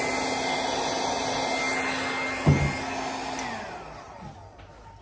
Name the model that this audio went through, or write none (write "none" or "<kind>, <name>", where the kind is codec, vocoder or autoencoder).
none